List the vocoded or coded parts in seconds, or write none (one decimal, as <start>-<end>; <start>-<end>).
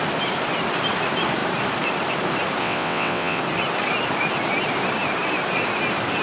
2.6-3.4